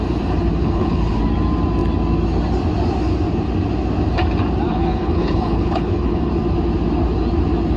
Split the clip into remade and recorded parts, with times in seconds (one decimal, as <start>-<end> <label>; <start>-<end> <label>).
0.0-0.6 recorded; 0.6-1.2 remade; 1.2-4.7 recorded; 4.7-6.3 remade; 6.3-7.8 recorded